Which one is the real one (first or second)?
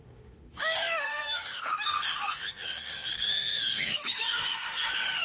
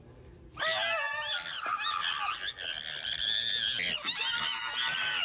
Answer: second